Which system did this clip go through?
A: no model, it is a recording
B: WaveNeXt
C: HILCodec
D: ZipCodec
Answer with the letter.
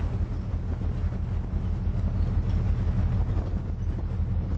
A